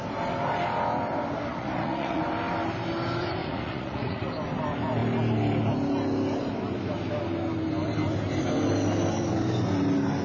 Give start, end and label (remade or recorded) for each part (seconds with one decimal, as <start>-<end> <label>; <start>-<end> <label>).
0.0-1.5 recorded; 1.5-2.2 remade; 2.2-3.4 recorded; 3.4-4.3 remade; 4.3-10.2 recorded

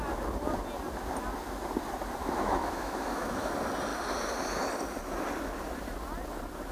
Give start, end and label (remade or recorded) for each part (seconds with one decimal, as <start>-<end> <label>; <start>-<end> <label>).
0.0-2.2 recorded; 2.2-3.5 remade; 3.5-6.7 recorded

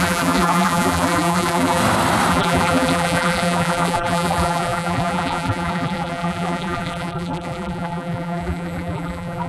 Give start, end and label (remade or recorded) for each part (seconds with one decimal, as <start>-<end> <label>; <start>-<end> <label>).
0.0-1.8 remade; 1.8-2.3 recorded; 2.3-9.5 remade

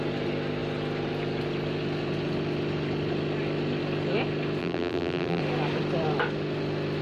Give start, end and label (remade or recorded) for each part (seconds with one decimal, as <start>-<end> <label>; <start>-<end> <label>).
0.0-4.6 recorded; 4.6-5.4 remade; 5.4-7.0 recorded

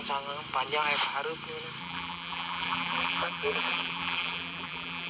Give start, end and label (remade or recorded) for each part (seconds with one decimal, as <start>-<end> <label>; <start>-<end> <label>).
0.0-1.8 recorded; 1.8-5.1 remade

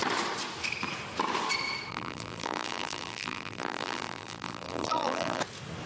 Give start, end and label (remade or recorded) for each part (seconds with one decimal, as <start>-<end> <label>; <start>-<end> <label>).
0.0-1.9 recorded; 1.9-5.4 remade; 5.4-5.9 recorded